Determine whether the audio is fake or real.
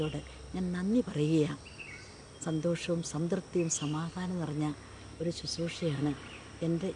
real